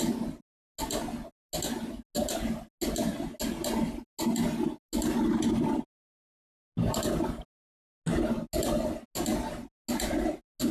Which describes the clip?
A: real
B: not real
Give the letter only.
A